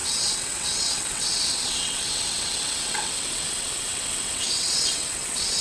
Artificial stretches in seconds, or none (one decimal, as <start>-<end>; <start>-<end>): 0.0-5.6